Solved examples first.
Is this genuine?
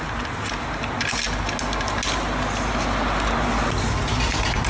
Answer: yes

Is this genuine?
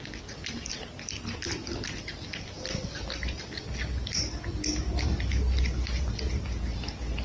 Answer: yes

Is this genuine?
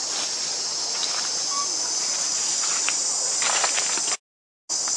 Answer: yes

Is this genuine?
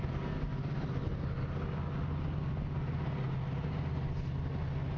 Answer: yes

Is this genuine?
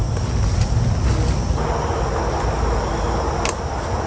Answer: yes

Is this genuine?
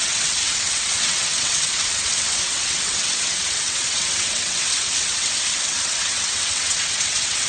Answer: no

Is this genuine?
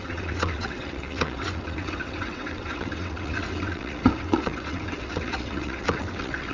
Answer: no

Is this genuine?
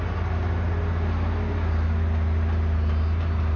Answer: yes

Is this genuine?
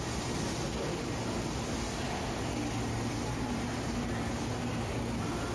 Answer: yes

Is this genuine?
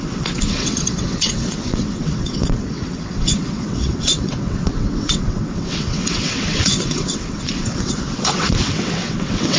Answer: no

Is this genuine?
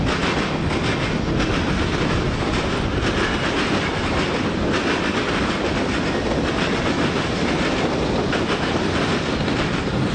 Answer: yes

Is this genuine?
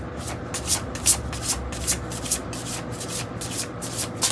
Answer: yes